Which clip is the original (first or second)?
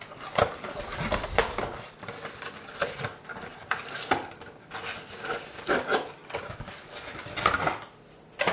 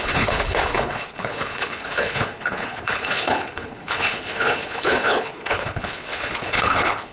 first